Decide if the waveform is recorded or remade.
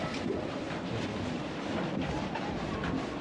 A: recorded